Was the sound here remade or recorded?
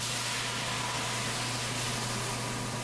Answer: recorded